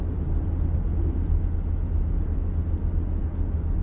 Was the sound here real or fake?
real